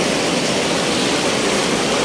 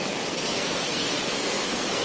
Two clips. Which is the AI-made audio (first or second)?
second